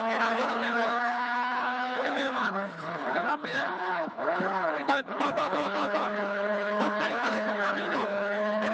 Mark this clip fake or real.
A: fake